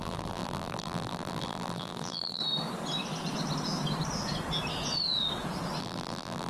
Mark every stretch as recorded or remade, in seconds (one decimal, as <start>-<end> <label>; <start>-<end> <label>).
0.0-2.4 remade; 2.4-5.8 recorded; 5.8-6.5 remade